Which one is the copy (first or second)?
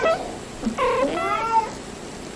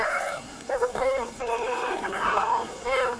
second